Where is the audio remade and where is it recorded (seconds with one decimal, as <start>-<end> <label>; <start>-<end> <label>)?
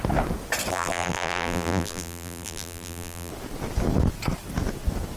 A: 0.0-0.7 recorded; 0.7-3.3 remade; 3.3-5.2 recorded